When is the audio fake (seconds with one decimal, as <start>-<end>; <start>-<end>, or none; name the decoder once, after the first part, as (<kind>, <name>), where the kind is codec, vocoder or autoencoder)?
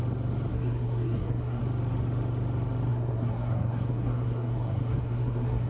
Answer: 0.5-1.6 (codec, SNAC); 2.9-5.7